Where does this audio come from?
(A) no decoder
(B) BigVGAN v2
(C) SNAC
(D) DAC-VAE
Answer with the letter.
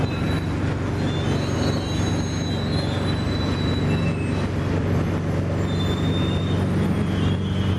A